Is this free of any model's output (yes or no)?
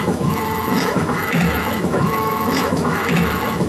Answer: no